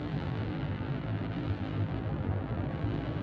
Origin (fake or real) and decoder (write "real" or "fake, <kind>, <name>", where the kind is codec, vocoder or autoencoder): fake, vocoder, BigVGAN v2